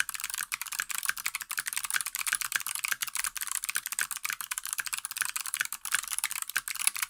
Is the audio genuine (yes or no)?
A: no